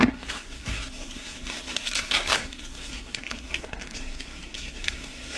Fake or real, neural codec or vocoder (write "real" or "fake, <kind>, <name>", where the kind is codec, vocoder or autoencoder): fake, codec, SNAC